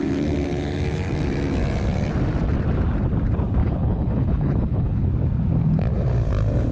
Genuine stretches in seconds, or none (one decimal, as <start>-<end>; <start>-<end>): 0.0-3.6; 5.1-6.7